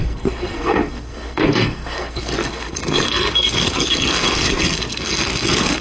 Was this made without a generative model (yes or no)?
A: no